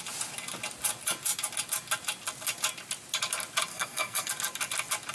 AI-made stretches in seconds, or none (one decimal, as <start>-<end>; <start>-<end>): 3.7-4.3